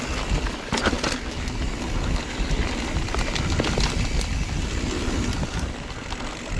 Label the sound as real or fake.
real